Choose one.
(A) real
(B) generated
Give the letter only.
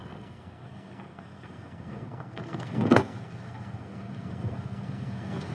B